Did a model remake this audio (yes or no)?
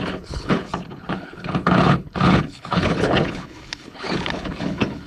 yes